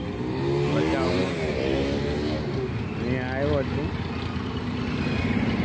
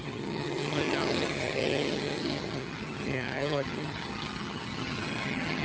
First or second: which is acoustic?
first